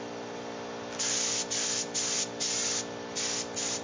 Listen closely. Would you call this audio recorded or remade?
recorded